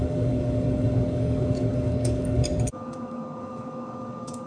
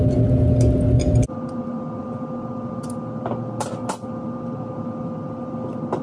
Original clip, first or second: second